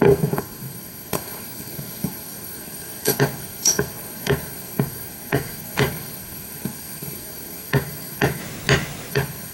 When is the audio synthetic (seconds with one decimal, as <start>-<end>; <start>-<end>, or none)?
0.0-8.4; 9.1-9.5